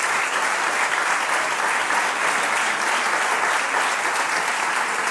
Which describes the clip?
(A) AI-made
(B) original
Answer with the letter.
B